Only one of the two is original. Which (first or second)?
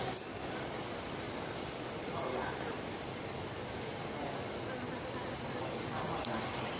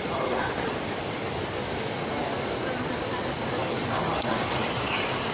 first